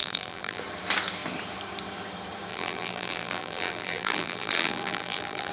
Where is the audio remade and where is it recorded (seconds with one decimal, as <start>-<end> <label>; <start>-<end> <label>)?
0.0-0.6 remade; 0.6-2.5 recorded; 2.5-5.5 remade